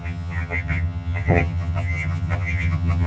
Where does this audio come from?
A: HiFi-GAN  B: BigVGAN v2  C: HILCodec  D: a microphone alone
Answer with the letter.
A